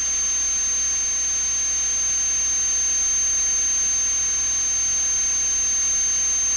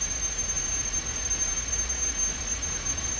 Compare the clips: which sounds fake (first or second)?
second